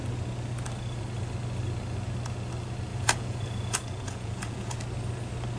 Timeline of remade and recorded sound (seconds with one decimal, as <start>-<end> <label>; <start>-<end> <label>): 0.0-2.9 recorded; 2.9-4.8 remade; 4.8-5.6 recorded